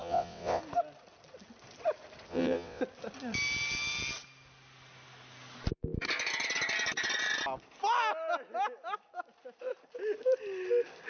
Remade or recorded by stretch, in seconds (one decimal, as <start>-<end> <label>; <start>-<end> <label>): 0.0-0.6 remade; 0.6-2.3 recorded; 2.3-2.8 remade; 2.8-11.1 recorded